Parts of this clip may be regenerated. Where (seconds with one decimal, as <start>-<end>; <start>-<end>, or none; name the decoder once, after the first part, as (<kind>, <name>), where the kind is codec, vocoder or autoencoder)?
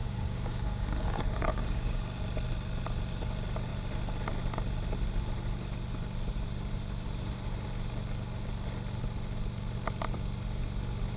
0.0-2.0 (codec, DAC)